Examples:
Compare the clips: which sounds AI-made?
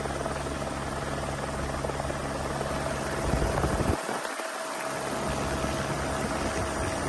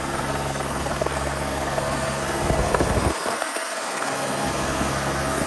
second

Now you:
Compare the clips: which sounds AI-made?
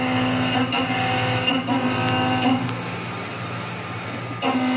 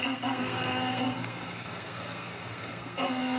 second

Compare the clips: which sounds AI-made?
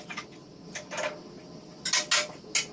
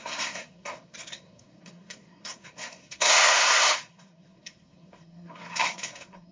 second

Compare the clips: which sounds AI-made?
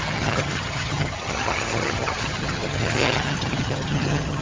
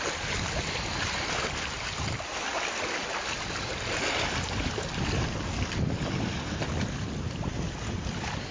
first